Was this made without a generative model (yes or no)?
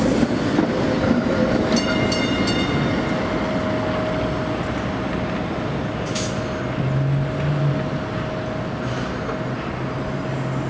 yes